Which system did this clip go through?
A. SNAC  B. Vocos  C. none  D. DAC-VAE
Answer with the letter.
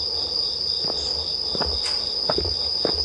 C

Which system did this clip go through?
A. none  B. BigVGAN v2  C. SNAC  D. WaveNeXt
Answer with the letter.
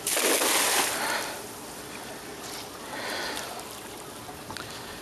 A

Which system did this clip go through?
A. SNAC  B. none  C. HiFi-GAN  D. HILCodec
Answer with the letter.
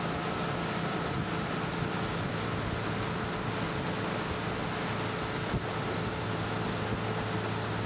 B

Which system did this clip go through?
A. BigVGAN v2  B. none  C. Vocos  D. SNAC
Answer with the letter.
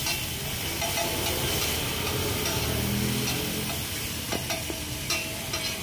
B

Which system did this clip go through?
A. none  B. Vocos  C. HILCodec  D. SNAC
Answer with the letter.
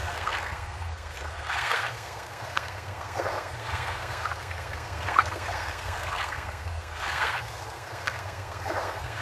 D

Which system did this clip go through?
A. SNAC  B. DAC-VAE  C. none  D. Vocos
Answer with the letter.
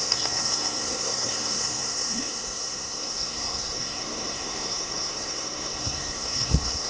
A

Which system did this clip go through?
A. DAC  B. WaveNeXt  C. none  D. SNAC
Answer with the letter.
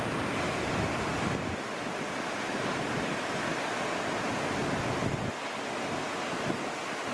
C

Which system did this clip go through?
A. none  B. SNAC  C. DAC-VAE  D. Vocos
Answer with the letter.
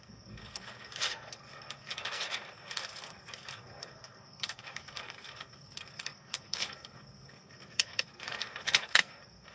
B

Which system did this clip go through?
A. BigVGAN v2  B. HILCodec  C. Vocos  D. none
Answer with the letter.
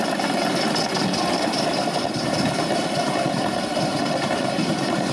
A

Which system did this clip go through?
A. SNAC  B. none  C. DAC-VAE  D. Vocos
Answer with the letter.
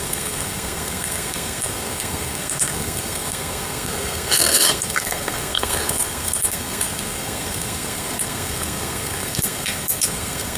A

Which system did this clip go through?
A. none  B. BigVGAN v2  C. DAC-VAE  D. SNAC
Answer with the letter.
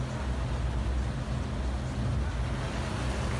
A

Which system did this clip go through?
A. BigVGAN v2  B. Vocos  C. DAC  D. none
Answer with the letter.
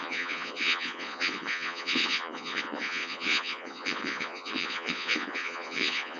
B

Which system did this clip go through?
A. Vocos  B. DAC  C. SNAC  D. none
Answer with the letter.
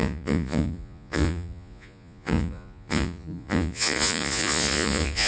A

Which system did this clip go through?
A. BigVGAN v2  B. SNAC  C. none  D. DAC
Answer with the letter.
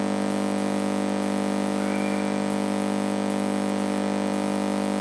C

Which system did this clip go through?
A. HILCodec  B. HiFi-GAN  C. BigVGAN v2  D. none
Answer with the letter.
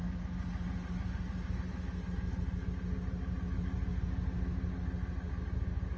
D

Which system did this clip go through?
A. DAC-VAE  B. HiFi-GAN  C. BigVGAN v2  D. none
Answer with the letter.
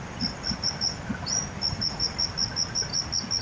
D